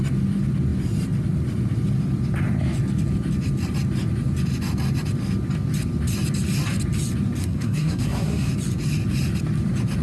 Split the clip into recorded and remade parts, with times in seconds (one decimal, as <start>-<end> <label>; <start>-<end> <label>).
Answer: 0.0-7.4 recorded; 7.4-8.5 remade; 8.5-10.0 recorded